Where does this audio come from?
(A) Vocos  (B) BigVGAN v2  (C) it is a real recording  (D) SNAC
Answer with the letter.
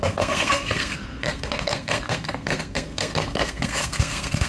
D